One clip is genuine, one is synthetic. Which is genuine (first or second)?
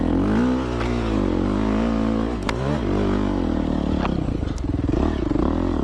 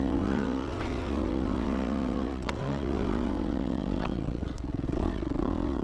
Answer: first